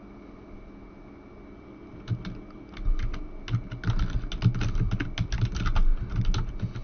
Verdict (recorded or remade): recorded